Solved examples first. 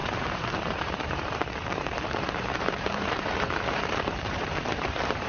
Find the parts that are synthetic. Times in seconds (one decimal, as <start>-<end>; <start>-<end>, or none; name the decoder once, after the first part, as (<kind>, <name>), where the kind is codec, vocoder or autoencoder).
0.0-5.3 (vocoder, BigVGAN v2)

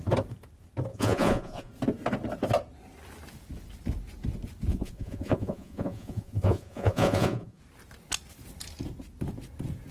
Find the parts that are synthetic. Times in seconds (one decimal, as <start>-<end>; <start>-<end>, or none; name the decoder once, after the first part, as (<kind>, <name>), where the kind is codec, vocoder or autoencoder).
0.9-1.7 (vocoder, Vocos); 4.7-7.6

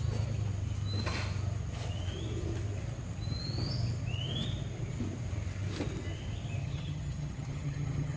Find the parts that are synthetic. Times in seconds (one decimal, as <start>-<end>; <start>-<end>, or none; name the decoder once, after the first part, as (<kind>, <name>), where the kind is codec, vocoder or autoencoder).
6.6-8.2 (vocoder, HiFi-GAN)

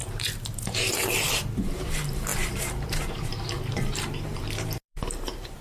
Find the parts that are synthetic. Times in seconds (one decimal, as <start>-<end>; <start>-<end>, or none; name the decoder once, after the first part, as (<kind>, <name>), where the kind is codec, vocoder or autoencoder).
0.0-5.6 (vocoder, BigVGAN v2)

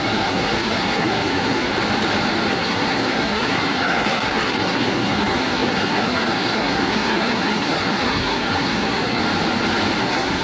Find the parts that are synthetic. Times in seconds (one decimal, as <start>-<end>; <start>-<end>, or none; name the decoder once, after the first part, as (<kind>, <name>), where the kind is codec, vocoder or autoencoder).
0.0-1.7 (codec, SNAC); 2.5-9.2; 10.0-10.4